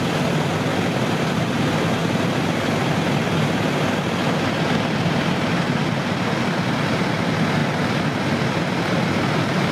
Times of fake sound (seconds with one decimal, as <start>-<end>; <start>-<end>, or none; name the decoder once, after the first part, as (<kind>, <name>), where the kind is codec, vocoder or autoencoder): 2.0-5.8 (vocoder, BigVGAN v2)